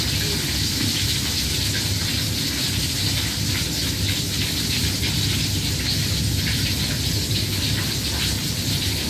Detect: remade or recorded recorded